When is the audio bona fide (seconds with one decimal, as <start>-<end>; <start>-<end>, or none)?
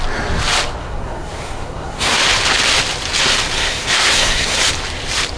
0.0-0.8; 2.2-3.6; 4.6-5.4